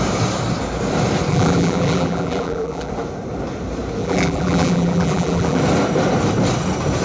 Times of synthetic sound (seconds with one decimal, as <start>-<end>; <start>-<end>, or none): 1.3-2.9; 4.0-5.6